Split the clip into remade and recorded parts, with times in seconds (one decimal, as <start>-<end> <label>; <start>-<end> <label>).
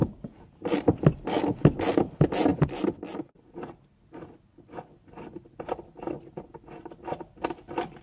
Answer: 0.0-8.0 recorded